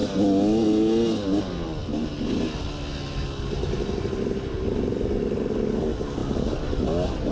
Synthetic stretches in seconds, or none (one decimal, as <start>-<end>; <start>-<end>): none